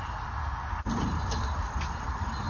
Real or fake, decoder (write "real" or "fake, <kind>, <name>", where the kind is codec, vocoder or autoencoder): real